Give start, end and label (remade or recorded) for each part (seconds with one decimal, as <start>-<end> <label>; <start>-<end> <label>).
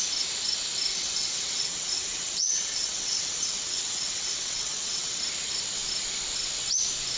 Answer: 0.0-0.9 recorded; 0.9-5.2 remade; 5.2-7.2 recorded